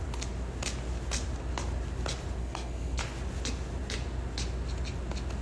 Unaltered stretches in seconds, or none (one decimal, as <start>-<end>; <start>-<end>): 0.0-2.4; 3.0-5.4

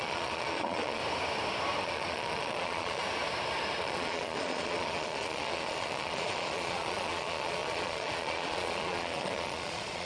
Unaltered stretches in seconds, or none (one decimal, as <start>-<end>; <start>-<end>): 1.0-1.8; 3.0-3.8